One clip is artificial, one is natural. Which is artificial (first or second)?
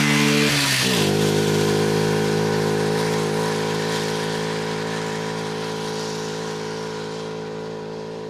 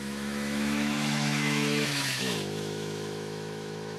second